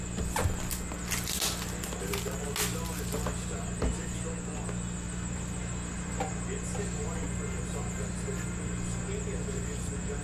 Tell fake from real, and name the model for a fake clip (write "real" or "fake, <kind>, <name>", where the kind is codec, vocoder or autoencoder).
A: real